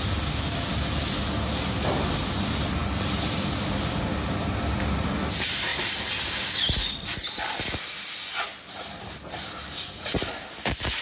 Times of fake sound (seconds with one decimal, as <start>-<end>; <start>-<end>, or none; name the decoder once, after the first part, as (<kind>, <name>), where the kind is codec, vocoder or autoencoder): none